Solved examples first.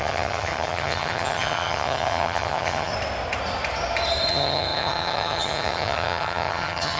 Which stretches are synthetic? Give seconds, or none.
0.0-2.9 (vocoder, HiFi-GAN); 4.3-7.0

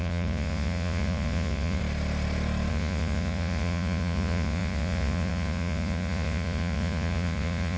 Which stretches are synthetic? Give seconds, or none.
0.0-1.8 (vocoder, Vocos); 2.7-7.8